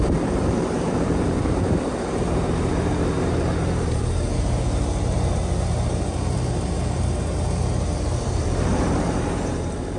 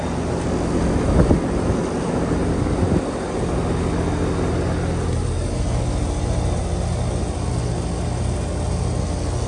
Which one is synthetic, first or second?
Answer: first